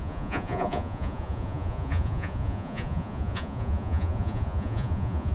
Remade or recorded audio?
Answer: remade